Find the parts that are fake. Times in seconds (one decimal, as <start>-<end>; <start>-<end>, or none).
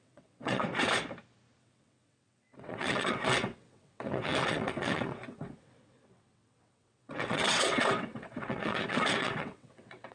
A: 0.0-0.6; 1.6-10.1